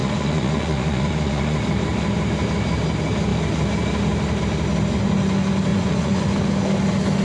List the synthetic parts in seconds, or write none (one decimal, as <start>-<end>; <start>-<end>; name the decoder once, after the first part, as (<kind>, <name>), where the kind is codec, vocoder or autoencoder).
0.0-1.6 (vocoder, Vocos); 5.7-6.3